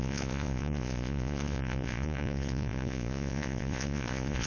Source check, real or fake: fake